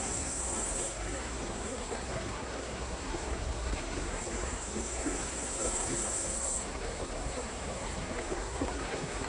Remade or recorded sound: remade